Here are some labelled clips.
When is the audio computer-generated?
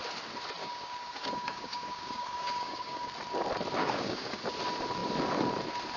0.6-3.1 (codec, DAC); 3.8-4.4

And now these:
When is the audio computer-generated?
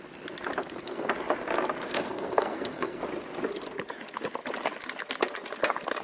0.6-1.1 (codec, SNAC); 1.9-3.0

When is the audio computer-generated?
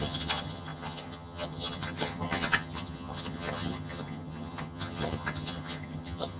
0.0-6.4 (vocoder, HiFi-GAN)